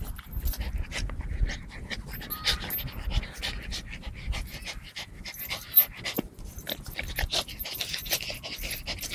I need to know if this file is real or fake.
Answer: real